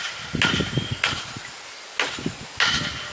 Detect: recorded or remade recorded